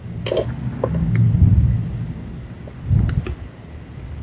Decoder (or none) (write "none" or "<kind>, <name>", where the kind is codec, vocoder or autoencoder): none